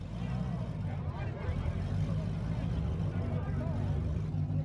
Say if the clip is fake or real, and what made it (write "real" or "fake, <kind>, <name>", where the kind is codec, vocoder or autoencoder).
real